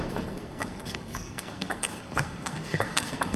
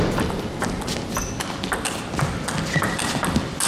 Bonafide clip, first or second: second